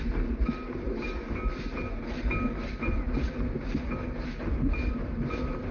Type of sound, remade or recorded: recorded